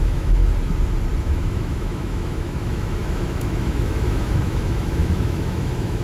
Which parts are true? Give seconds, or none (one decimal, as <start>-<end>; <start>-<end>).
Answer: 0.4-1.2